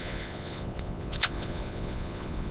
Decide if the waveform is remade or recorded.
remade